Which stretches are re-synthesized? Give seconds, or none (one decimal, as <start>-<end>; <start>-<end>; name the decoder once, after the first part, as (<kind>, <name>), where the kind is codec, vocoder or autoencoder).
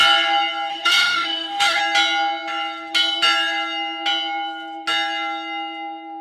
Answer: 0.7-1.8 (autoencoder, DAC-VAE)